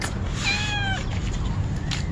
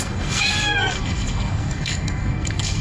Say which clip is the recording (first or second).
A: first